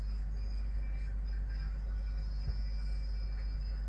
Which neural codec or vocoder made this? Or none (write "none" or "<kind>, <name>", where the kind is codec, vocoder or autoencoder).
none